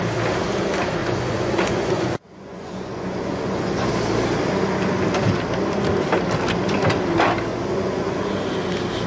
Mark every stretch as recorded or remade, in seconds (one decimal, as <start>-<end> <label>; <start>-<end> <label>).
0.0-1.0 recorded; 1.0-3.9 remade; 3.9-7.5 recorded; 7.5-8.3 remade; 8.3-9.1 recorded